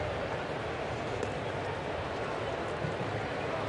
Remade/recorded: recorded